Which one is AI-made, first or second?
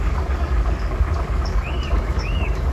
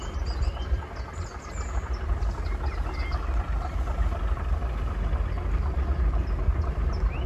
first